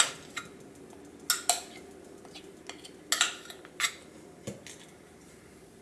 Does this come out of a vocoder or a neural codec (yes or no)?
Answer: no